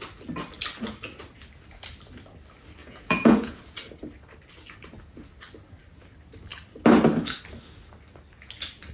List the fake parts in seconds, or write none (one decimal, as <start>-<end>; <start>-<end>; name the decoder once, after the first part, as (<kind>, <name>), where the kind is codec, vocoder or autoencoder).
2.8-3.6 (vocoder, Vocos)